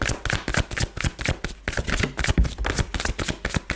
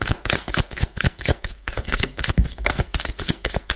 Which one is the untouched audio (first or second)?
first